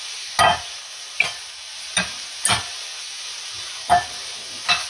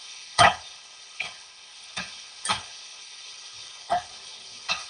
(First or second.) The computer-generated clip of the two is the second